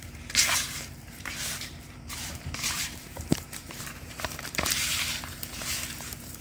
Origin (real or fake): fake